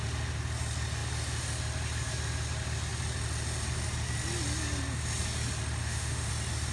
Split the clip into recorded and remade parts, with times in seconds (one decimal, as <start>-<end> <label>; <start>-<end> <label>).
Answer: 0.0-5.8 recorded; 5.8-6.3 remade; 6.3-6.7 recorded